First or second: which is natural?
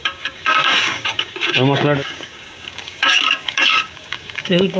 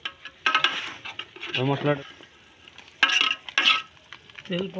second